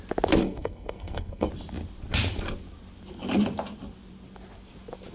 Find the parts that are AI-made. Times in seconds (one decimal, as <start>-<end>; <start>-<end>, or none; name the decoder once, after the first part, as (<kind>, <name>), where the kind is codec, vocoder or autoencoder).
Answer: 0.4-1.5 (codec, SNAC)